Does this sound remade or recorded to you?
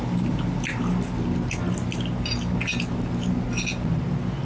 recorded